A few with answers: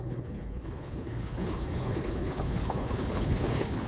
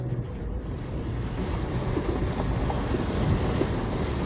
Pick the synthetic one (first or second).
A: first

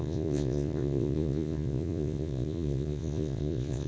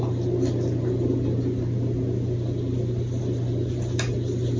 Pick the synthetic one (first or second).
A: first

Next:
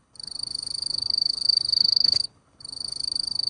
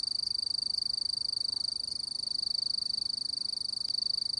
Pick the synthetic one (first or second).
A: first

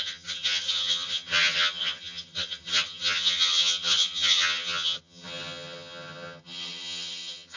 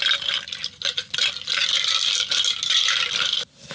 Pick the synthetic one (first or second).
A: first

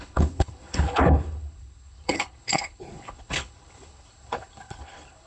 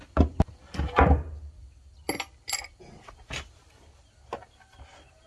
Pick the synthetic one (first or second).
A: first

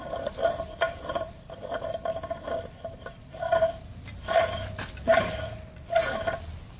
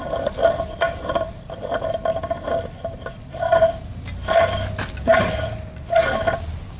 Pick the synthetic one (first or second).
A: first